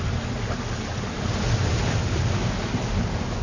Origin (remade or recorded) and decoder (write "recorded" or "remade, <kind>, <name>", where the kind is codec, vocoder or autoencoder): recorded